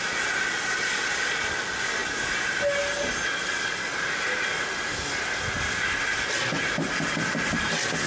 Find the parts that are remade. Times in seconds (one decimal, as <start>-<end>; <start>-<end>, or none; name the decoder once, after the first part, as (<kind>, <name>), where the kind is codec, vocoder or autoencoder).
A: none

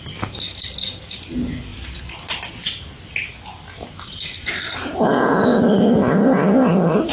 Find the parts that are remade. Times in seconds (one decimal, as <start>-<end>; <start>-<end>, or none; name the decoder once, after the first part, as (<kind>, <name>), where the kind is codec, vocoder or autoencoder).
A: none

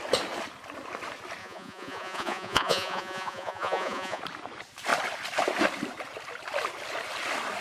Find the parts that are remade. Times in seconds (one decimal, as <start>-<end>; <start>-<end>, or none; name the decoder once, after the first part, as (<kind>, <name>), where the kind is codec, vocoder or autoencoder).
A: 1.4-4.2 (vocoder, Vocos)

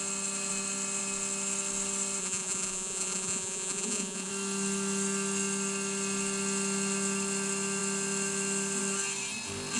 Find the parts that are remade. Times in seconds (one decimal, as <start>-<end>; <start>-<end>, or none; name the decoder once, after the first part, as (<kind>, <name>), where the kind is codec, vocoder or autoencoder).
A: 2.2-4.3 (vocoder, Vocos)

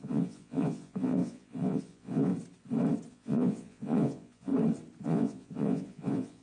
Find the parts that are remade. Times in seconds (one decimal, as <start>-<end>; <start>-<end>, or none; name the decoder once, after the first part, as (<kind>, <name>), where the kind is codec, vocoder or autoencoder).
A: 0.0-2.3 (vocoder, Vocos); 3.1-4.5; 5.0-6.4